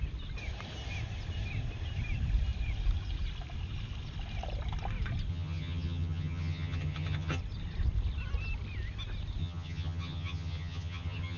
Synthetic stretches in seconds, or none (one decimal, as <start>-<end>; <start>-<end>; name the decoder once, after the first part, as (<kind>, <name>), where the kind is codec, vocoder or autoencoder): 5.3-7.4 (vocoder, HiFi-GAN); 9.4-11.4